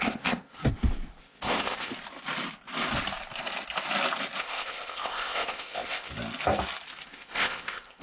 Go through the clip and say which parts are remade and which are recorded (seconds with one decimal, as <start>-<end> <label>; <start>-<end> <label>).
0.0-0.6 remade; 0.6-1.2 recorded; 1.2-1.9 remade; 1.9-4.4 recorded; 4.4-6.1 remade; 6.1-7.1 recorded; 7.1-8.0 remade